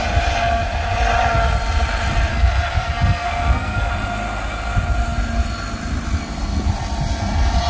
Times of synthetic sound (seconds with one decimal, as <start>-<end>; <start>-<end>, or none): 2.3-3.9